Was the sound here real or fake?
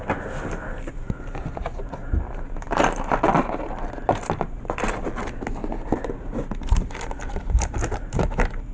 real